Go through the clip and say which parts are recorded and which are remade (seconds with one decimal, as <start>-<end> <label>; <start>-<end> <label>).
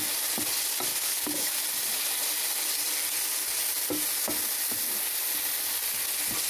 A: 0.0-0.9 recorded; 0.9-1.6 remade; 1.6-6.5 recorded